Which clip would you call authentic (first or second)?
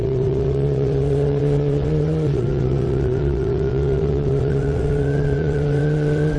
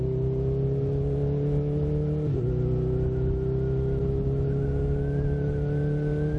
second